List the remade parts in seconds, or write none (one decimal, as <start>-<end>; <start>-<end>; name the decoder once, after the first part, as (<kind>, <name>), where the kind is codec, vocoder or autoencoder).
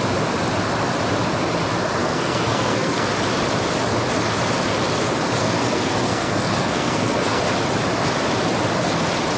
2.0-3.1 (codec, SNAC); 5.4-7.4